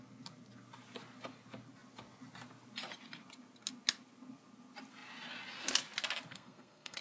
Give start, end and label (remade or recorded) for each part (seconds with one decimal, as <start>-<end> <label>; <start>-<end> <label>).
0.0-6.3 recorded; 6.3-7.0 remade